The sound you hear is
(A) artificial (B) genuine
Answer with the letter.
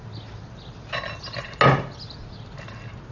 B